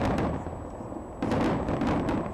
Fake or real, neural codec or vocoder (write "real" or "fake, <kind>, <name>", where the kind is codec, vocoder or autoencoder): real